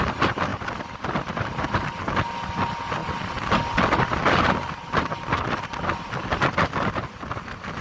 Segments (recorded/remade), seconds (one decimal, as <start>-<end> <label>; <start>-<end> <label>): 0.0-7.8 recorded